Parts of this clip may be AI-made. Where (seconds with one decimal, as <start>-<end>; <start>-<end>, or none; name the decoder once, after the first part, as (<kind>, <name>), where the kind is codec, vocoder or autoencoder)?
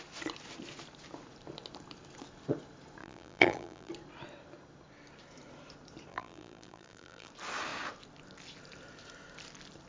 3.0-3.9 (vocoder, BigVGAN v2); 6.1-7.3